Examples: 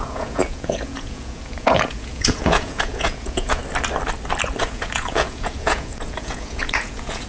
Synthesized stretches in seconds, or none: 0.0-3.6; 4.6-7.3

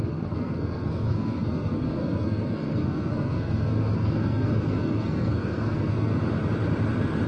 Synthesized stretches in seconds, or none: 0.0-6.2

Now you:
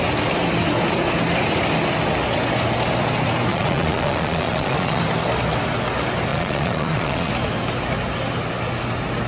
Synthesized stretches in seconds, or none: 3.5-5.0; 6.3-7.3

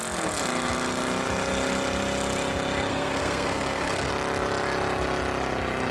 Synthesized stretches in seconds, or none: 2.9-4.1

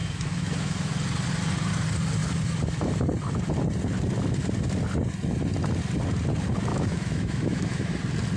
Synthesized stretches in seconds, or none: 0.0-0.9; 6.7-7.9

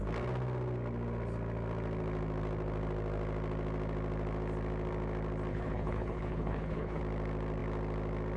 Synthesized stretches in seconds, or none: 5.5-7.0